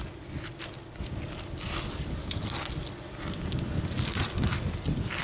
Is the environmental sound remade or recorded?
recorded